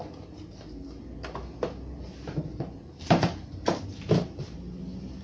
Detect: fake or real real